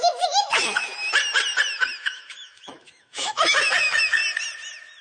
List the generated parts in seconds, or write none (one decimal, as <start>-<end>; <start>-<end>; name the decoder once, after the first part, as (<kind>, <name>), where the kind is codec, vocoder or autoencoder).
0.0-0.9 (autoencoder, DAC-VAE); 2.0-4.2